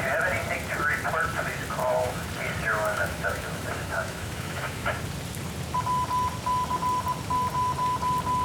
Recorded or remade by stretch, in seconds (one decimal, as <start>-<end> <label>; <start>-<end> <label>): 0.0-1.8 recorded; 1.8-2.3 remade; 2.3-2.7 recorded; 2.7-5.0 remade; 5.0-8.4 recorded